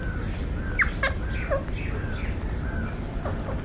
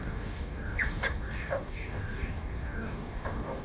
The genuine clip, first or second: first